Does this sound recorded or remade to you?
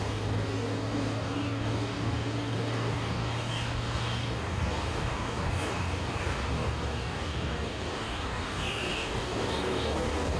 remade